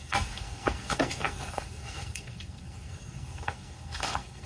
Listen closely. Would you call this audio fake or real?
fake